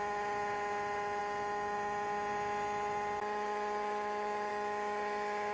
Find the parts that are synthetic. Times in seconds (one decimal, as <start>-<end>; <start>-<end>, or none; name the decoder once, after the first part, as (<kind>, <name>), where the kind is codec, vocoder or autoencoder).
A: none